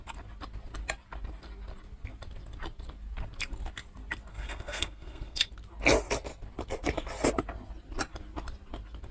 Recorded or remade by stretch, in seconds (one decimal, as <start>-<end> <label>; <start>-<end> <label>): 0.0-4.3 recorded; 4.3-5.5 remade; 5.5-9.1 recorded

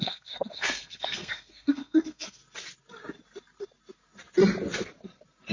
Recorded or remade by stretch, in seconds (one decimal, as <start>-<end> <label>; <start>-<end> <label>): 0.0-2.4 remade; 2.4-5.5 recorded

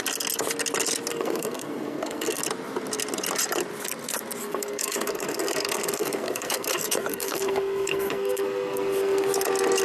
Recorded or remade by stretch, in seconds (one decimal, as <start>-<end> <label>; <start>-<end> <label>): 0.0-1.1 recorded; 1.1-2.4 remade; 2.4-4.4 recorded; 4.4-9.3 remade; 9.3-9.8 recorded

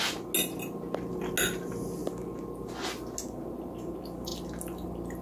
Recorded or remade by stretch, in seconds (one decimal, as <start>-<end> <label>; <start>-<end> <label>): 0.0-5.2 recorded

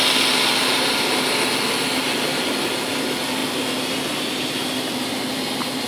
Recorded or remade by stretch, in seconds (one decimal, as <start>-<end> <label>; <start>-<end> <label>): 0.0-5.9 recorded